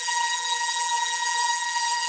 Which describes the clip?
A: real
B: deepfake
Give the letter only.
B